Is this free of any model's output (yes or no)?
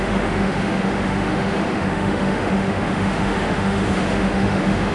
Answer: no